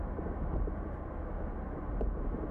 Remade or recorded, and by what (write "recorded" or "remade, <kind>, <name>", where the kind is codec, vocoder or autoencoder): recorded